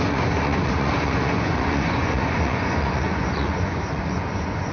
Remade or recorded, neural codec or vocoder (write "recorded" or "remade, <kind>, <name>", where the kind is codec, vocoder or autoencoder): remade, vocoder, Vocos